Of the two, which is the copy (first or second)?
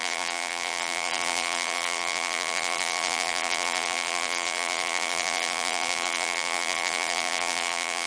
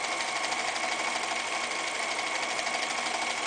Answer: first